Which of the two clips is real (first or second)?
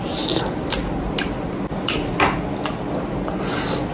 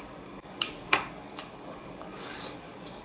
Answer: first